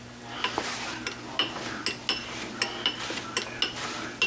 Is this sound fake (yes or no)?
no